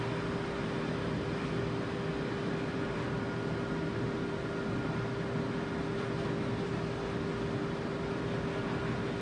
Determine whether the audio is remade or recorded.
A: recorded